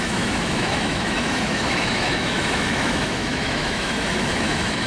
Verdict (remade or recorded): remade